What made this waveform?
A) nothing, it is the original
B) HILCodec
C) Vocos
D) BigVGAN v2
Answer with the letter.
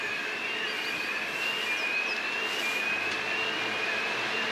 A